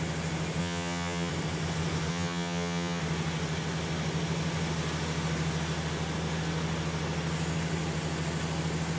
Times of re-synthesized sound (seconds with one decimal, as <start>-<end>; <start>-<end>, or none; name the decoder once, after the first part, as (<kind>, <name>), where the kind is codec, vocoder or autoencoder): 0.6-1.3 (vocoder, HiFi-GAN); 2.1-3.0